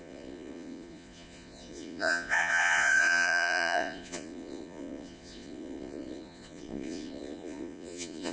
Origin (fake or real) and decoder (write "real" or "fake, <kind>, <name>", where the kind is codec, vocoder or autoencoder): fake, vocoder, Vocos